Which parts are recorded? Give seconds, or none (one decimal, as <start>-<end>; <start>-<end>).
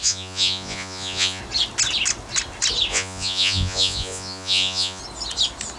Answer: 1.4-2.9; 5.0-5.8